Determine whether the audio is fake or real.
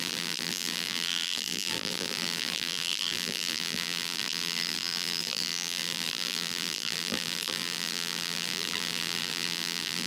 fake